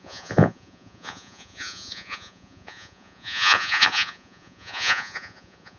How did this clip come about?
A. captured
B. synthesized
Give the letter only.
B